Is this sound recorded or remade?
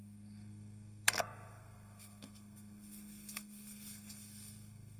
remade